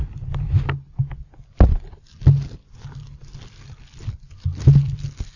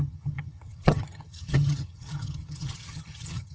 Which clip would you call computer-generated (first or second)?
second